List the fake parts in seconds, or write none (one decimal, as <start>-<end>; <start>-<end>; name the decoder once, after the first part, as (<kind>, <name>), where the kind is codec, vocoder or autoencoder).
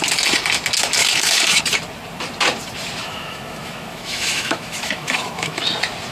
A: 1.0-1.6 (autoencoder, DAC-VAE); 3.0-5.6